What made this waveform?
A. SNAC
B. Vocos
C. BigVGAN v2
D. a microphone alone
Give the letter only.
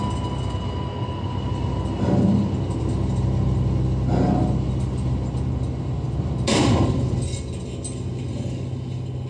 D